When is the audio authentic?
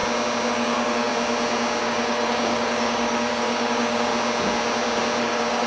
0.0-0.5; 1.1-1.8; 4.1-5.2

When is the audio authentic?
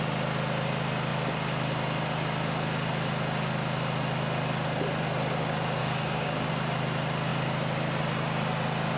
0.0-5.8; 6.5-9.0